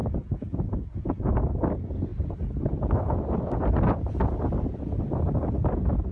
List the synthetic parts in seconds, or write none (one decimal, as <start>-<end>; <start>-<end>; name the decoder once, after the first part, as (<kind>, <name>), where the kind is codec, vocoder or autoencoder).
0.0-1.3 (vocoder, Vocos)